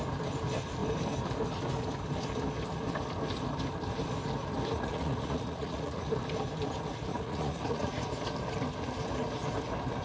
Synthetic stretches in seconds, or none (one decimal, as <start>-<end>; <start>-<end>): 4.7-6.1; 7.1-8.1